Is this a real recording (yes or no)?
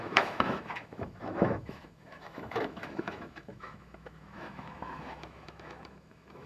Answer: no